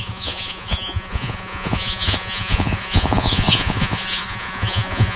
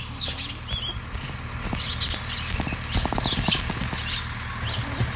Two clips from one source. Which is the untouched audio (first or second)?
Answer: second